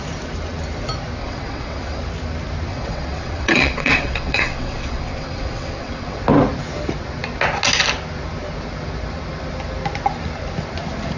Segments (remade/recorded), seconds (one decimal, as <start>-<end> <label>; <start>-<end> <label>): 0.0-1.2 recorded; 1.2-2.0 remade; 2.0-2.7 recorded; 2.7-6.2 remade; 6.2-11.2 recorded